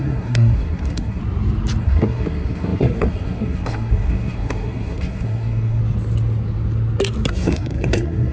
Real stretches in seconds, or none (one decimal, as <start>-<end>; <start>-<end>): 1.2-1.8; 5.8-7.3